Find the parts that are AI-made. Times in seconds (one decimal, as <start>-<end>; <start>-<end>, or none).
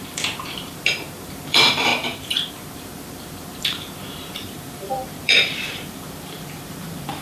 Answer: 0.0-7.2